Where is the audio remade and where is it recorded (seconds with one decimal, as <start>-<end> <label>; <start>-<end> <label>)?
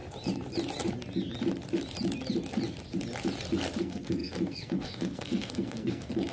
0.0-3.8 recorded; 3.8-6.3 remade